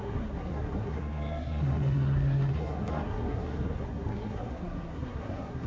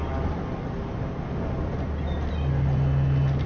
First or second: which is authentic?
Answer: second